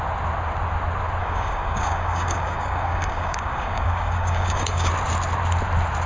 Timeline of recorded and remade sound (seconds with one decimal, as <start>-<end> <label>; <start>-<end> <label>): 0.0-1.2 recorded; 1.2-4.9 remade; 4.9-6.1 recorded